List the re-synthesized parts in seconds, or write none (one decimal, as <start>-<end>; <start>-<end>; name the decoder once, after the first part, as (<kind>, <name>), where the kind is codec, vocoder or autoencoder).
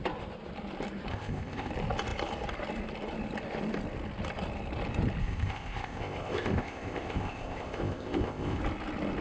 1.1-1.7 (codec, ZipCodec); 5.2-8.6